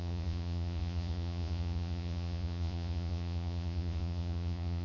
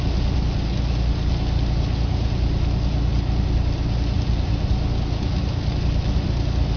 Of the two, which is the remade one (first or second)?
first